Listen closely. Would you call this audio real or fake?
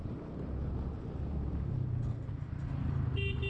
real